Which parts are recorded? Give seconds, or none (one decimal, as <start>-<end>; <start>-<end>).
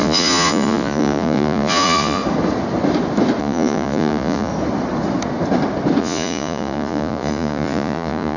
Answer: 2.2-3.4; 4.5-6.0